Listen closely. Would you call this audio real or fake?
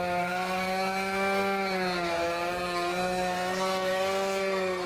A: fake